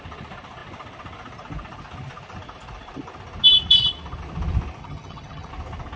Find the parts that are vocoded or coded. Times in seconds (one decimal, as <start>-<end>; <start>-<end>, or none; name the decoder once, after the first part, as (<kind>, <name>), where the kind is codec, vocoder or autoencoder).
4.8-5.5 (vocoder, HiFi-GAN)